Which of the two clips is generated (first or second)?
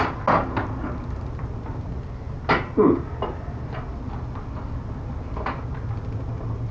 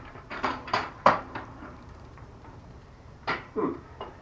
second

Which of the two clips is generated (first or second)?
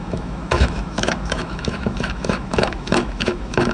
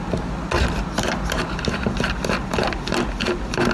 first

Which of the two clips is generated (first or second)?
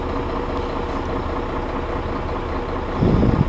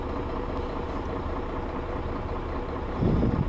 second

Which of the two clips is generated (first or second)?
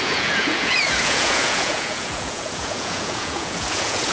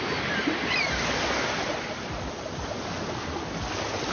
first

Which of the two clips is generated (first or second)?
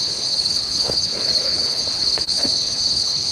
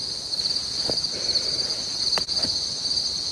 first